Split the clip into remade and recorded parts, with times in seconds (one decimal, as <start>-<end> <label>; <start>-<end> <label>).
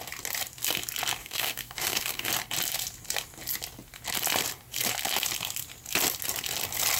0.0-1.2 recorded; 1.2-2.3 remade; 2.3-7.0 recorded